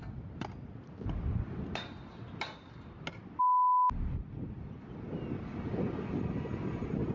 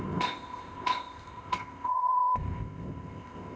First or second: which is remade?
second